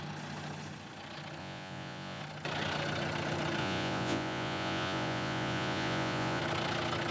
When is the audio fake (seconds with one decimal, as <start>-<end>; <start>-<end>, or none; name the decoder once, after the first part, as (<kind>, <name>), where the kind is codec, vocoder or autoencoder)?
1.4-2.2 (vocoder, Vocos); 3.6-6.4